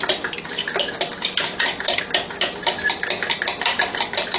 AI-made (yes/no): no